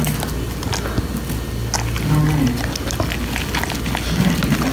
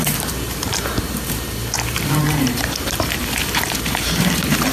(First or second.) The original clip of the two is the first